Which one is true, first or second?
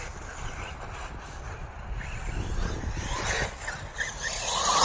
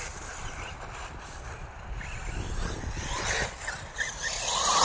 first